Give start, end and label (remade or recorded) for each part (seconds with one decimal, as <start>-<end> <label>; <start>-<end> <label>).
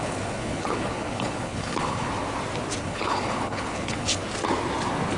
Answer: 0.0-2.1 remade; 2.1-2.8 recorded; 2.8-4.2 remade; 4.2-5.2 recorded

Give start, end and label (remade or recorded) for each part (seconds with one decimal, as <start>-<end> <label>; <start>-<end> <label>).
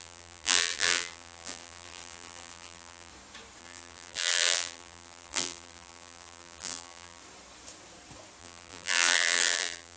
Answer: 0.0-3.1 remade; 3.1-3.6 recorded; 3.6-7.2 remade; 7.2-8.4 recorded; 8.4-10.0 remade